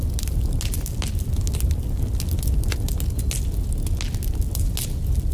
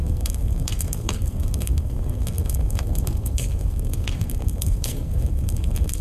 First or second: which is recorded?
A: first